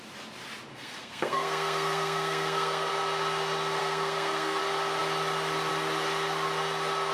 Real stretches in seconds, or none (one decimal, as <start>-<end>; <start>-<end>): 0.0-0.7; 2.9-3.8; 4.6-7.1